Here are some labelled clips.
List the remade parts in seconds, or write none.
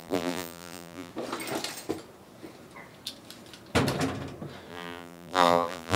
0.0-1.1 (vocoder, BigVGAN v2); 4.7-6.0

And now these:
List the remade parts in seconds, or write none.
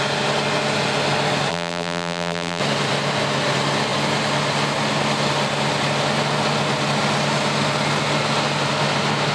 1.5-2.6 (vocoder, BigVGAN v2)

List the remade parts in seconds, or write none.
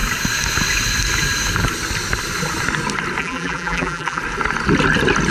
3.2-4.2 (vocoder, BigVGAN v2)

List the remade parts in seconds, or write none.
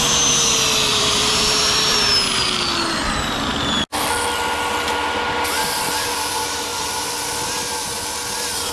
0.9-2.1 (vocoder, BigVGAN v2)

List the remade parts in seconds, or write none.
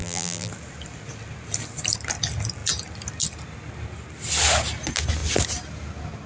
0.0-0.5 (vocoder, BigVGAN v2)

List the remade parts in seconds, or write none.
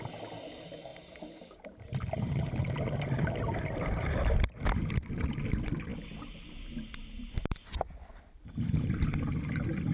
none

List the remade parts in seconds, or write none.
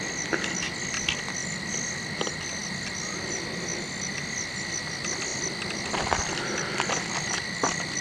none